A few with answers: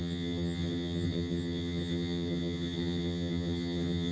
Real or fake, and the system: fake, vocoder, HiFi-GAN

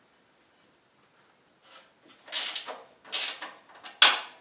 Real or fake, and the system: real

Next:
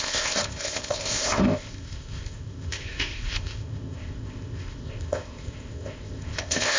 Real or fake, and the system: fake, codec, ZipCodec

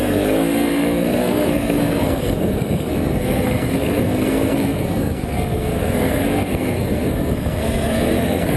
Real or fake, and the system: fake, codec, SNAC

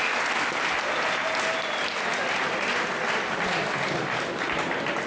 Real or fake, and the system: real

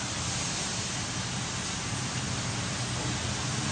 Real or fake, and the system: real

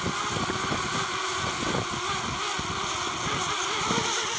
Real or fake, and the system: real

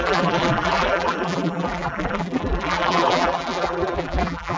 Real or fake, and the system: fake, vocoder, BigVGAN v2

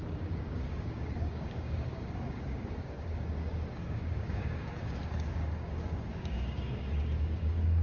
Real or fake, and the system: fake, codec, DAC